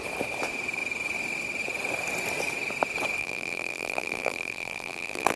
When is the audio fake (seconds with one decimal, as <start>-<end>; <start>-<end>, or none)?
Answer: 3.2-5.4